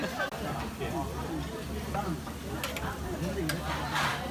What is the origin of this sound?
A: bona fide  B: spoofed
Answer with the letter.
A